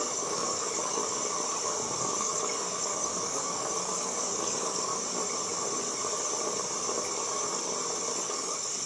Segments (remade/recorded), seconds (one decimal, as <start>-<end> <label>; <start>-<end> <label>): 0.0-1.0 remade; 1.0-2.0 recorded; 2.0-4.9 remade; 4.9-8.2 recorded; 8.2-8.9 remade